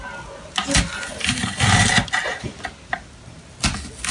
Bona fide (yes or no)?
yes